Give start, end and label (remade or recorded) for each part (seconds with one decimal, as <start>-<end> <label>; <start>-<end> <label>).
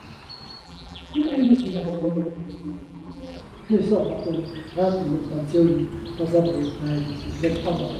0.0-0.6 recorded; 0.6-3.4 remade; 3.4-8.0 recorded